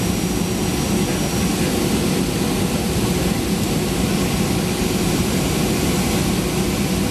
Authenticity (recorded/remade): recorded